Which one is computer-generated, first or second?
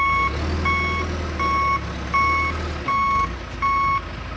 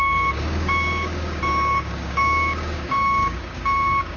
second